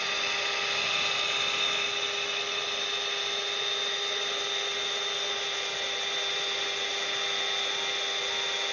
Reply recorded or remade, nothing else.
recorded